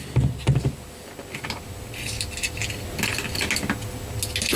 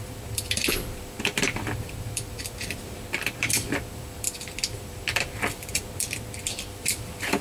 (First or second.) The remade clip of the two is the second